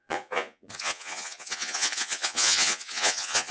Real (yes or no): no